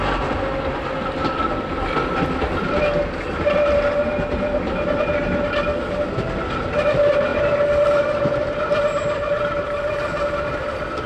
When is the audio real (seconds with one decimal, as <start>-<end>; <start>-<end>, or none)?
0.0-11.1